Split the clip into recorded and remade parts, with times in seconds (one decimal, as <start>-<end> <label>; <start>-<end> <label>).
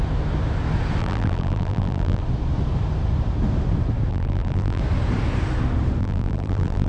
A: 0.0-1.0 recorded; 1.0-2.2 remade; 2.2-4.1 recorded; 4.1-4.8 remade; 4.8-6.0 recorded; 6.0-6.9 remade